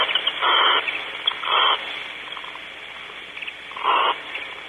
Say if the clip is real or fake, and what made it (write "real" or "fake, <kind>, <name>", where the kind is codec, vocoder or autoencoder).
real